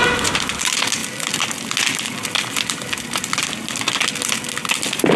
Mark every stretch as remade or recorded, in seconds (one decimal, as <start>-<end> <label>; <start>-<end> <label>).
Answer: 0.0-5.2 recorded